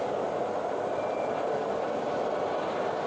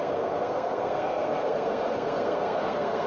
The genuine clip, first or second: first